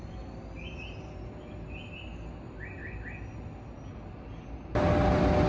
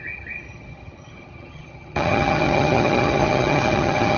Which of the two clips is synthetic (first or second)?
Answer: second